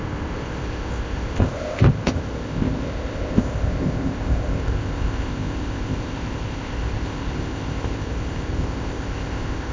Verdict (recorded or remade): remade